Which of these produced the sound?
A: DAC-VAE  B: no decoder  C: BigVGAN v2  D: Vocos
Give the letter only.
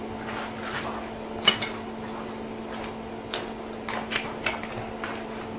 B